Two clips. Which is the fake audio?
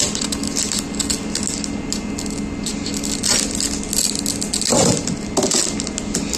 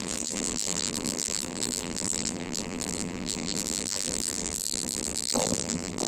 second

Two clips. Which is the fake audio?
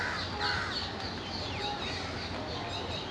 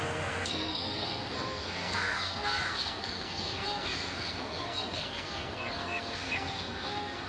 second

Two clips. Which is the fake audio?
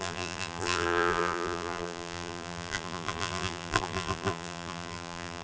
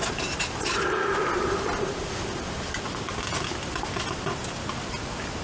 first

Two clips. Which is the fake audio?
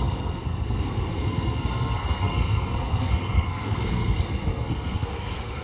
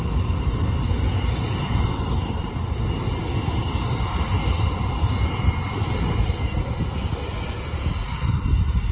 first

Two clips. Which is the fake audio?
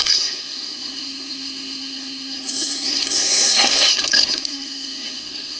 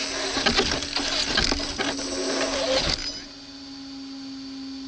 first